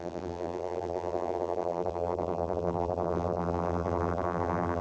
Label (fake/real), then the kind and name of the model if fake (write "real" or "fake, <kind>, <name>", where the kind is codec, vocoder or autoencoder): fake, vocoder, BigVGAN v2